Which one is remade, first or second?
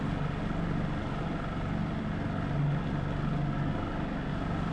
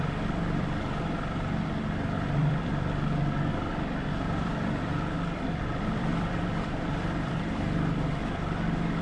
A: second